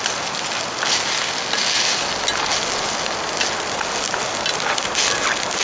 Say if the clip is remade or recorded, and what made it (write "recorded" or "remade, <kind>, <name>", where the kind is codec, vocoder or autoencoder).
recorded